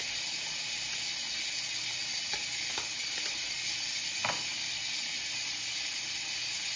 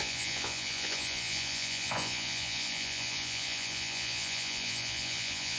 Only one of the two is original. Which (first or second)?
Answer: first